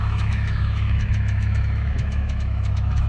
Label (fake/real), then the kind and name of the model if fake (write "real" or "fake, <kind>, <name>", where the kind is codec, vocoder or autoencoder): fake, autoencoder, DAC-VAE